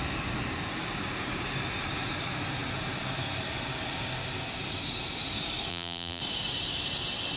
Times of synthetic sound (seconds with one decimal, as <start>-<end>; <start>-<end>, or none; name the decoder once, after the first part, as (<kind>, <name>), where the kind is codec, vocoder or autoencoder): 5.7-6.2 (vocoder, BigVGAN v2)